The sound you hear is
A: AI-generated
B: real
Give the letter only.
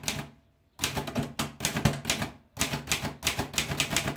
B